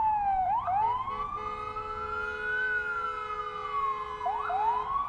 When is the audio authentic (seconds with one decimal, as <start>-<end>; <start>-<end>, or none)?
0.0-5.1